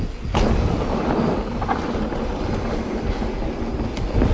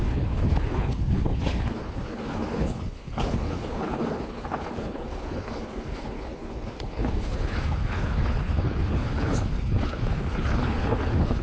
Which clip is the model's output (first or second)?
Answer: second